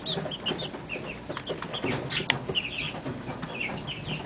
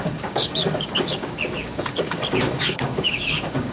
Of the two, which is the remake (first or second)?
second